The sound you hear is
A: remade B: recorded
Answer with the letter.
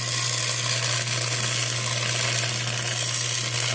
B